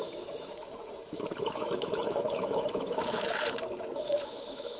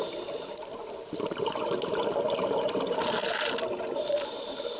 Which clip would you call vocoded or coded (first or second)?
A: first